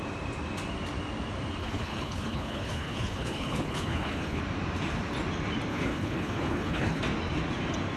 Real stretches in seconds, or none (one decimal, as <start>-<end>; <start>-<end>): 0.0-1.6; 4.4-5.7; 7.0-8.0